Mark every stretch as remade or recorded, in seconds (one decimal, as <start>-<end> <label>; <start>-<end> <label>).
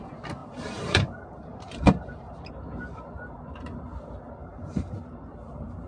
0.0-0.4 recorded; 0.4-2.5 remade; 2.5-4.4 recorded; 4.4-4.9 remade; 4.9-5.9 recorded